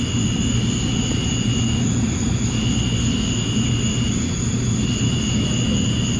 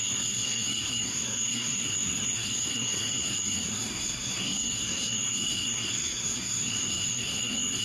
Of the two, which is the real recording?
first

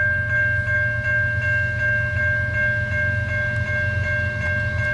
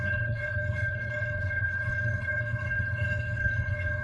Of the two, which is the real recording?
first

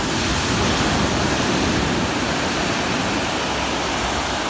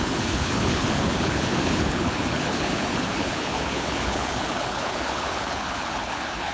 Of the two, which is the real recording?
first